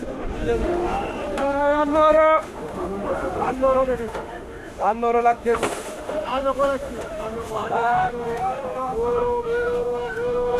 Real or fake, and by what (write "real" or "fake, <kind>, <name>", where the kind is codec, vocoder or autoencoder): fake, autoencoder, DAC-VAE